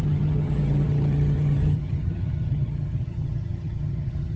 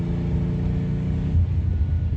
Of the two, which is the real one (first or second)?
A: second